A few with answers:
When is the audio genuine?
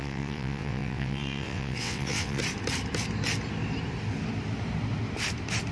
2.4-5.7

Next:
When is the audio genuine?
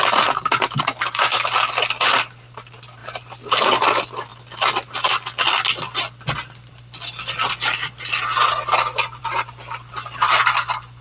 0.0-11.0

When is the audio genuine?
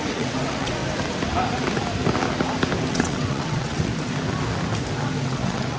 0.8-2.9; 3.9-5.2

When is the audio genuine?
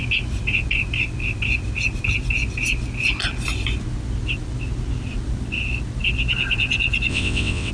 0.0-7.1